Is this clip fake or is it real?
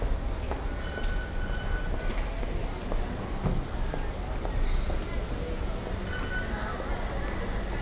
real